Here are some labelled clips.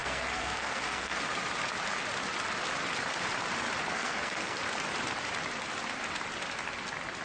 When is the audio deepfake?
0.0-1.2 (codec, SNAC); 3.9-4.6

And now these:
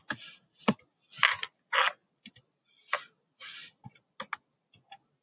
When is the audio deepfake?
none

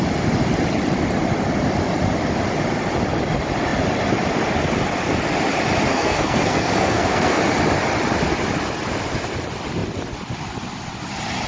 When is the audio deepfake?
5.9-7.4 (codec, SNAC)

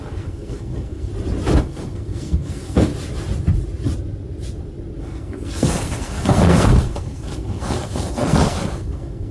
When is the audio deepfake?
0.0-1.1 (codec, SNAC); 1.6-2.9; 5.0-9.3

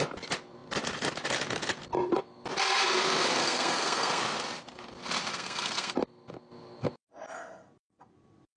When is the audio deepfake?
3.4-4.2 (codec, SNAC); 5.3-5.9

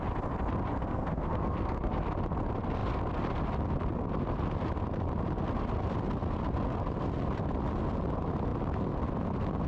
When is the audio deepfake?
0.8-2.0 (codec, SNAC)

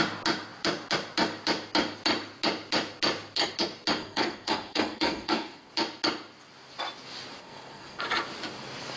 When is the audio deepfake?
4.0-5.7 (codec, SNAC); 7.4-8.0

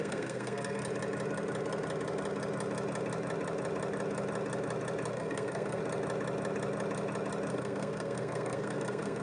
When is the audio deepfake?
0.0-0.8 (codec, SNAC); 5.1-5.8; 7.5-9.2